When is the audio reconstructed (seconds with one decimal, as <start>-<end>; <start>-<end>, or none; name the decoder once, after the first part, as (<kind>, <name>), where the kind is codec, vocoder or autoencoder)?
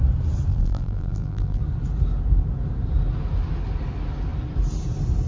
0.5-1.6 (vocoder, BigVGAN v2)